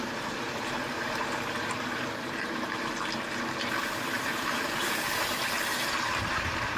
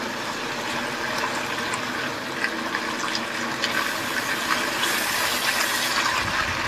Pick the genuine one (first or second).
second